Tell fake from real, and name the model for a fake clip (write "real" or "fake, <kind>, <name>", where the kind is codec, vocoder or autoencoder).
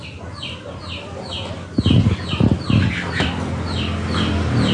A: real